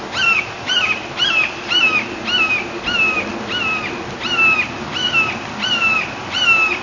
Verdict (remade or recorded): recorded